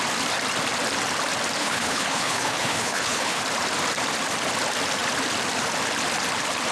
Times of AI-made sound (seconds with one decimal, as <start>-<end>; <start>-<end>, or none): 1.6-3.4